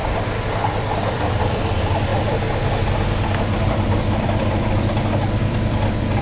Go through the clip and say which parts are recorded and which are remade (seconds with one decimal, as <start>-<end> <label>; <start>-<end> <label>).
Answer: 0.0-1.1 recorded; 1.1-2.1 remade; 2.1-3.2 recorded; 3.2-6.2 remade